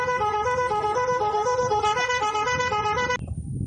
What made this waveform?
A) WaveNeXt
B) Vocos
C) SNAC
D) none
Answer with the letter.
D